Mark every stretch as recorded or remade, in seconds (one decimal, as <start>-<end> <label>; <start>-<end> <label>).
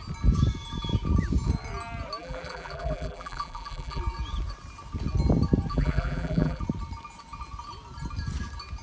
0.0-2.2 recorded; 2.2-4.0 remade; 4.0-5.7 recorded; 5.7-6.6 remade; 6.6-8.8 recorded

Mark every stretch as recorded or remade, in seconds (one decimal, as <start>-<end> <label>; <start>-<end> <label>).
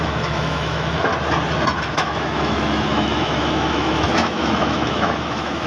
0.0-1.1 remade; 1.1-1.9 recorded; 1.9-5.7 remade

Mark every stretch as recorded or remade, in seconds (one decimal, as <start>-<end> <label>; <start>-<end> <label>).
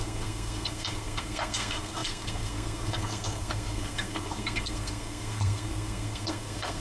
0.0-6.8 remade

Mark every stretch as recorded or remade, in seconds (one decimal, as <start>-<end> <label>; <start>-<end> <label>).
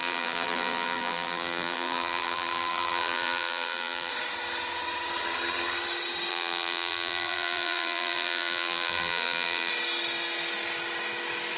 0.0-4.1 remade; 4.1-6.3 recorded; 6.3-9.7 remade; 9.7-11.6 recorded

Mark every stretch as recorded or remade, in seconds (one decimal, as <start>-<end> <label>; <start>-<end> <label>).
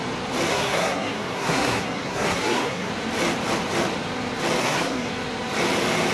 0.0-0.5 recorded; 0.5-2.9 remade; 2.9-4.6 recorded; 4.6-5.1 remade; 5.1-6.1 recorded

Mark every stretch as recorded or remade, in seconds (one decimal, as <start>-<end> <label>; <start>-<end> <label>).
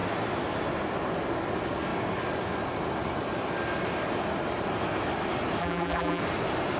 0.0-5.6 recorded; 5.6-6.2 remade; 6.2-6.8 recorded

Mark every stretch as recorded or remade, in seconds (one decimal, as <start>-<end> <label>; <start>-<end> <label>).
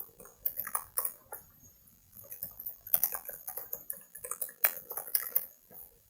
0.0-1.2 remade; 1.2-1.9 recorded; 1.9-3.6 remade; 3.6-4.1 recorded; 4.1-6.1 remade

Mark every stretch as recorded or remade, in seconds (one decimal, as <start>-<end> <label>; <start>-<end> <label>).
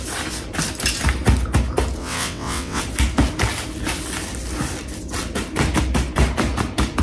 0.0-2.0 recorded; 2.0-2.8 remade; 2.8-7.0 recorded